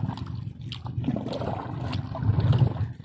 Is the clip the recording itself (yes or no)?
yes